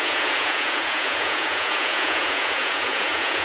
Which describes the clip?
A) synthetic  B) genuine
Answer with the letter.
A